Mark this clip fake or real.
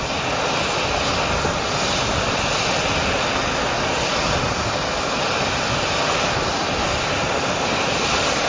real